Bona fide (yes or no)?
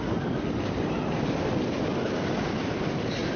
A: yes